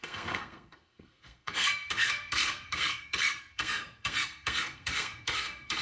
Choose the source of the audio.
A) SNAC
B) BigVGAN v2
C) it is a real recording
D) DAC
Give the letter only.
A